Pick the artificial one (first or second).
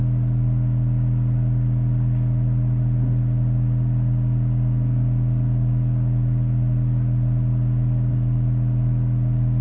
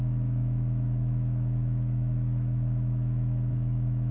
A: second